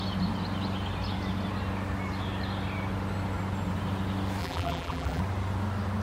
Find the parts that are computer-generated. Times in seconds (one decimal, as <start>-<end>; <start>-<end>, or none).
4.4-5.2